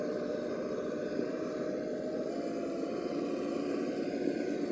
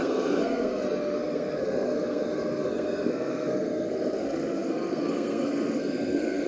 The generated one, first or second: second